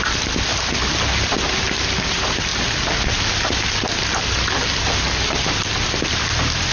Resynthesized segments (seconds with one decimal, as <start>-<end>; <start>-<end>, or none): none